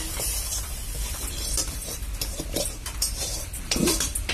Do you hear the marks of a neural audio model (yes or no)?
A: yes